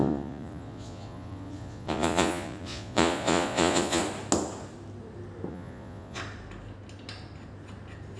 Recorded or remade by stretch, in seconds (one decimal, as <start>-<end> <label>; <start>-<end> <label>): 0.0-4.0 remade; 4.0-5.5 recorded; 5.5-6.2 remade; 6.2-8.2 recorded